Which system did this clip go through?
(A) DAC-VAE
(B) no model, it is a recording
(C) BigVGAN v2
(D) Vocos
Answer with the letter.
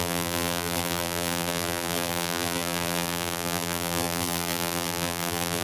C